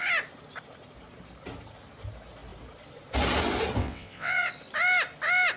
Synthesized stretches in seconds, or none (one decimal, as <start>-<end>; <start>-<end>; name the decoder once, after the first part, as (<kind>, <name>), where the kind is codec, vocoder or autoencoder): 3.8-4.5 (vocoder, WaveNeXt)